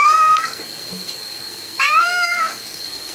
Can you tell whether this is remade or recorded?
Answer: remade